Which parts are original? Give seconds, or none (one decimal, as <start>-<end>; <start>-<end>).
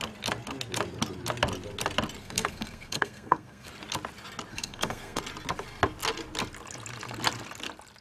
0.0-2.2; 3.7-4.5; 5.2-8.0